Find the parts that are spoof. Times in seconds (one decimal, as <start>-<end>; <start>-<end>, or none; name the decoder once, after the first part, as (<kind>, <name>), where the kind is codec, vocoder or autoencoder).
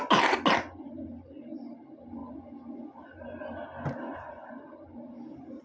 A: none